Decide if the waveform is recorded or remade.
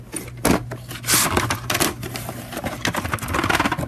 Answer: recorded